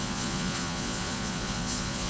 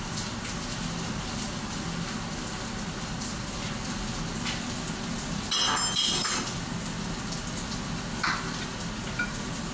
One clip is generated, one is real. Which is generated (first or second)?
first